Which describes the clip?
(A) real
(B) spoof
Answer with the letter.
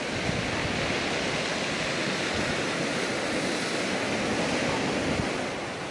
A